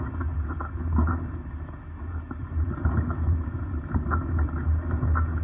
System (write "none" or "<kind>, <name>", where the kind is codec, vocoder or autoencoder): none